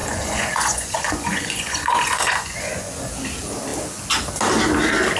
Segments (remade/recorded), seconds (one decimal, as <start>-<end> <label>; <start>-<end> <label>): 0.0-3.1 remade; 3.1-5.2 recorded